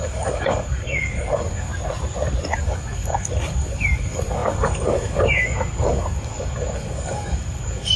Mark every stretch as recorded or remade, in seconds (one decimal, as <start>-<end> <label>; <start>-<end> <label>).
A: 0.0-1.7 remade; 1.7-2.5 recorded; 2.5-8.0 remade